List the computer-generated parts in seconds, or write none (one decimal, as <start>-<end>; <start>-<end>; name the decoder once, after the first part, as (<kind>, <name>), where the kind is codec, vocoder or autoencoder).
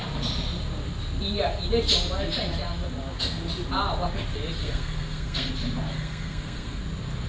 4.6-5.5 (codec, SNAC); 5.9-6.8